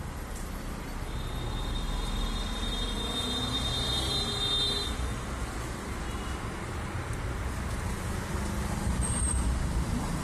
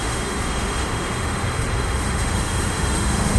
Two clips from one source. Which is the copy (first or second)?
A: second